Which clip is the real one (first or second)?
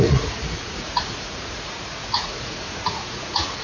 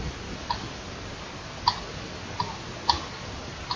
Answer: second